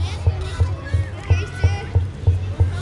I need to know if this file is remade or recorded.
recorded